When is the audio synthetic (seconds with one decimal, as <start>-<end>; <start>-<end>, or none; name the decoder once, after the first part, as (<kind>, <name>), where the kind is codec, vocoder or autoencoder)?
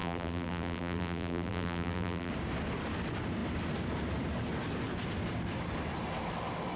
0.0-2.3 (vocoder, BigVGAN v2)